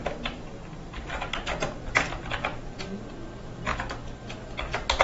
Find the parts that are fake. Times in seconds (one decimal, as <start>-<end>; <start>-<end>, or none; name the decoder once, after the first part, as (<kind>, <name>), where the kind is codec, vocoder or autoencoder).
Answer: 0.0-3.0 (vocoder, BigVGAN v2); 3.7-4.2